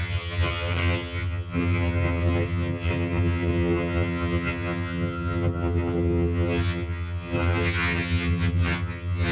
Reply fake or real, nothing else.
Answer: fake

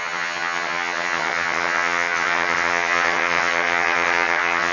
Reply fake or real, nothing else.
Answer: fake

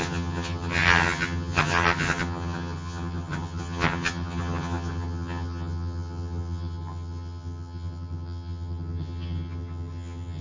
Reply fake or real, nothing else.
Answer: fake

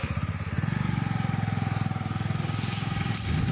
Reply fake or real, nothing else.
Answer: real